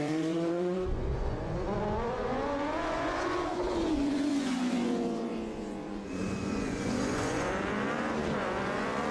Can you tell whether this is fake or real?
fake